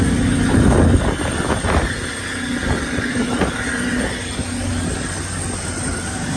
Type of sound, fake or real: real